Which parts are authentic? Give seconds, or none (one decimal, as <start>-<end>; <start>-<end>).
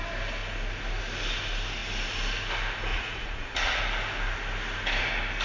0.0-2.9; 3.8-5.4